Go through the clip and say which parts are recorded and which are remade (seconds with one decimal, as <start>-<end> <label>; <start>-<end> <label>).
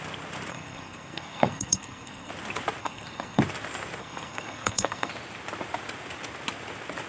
0.0-0.5 recorded; 0.5-2.3 remade; 2.3-2.8 recorded; 2.8-3.4 remade; 3.4-4.0 recorded; 4.0-5.1 remade; 5.1-7.1 recorded